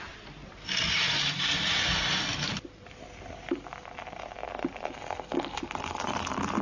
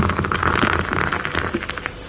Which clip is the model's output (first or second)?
first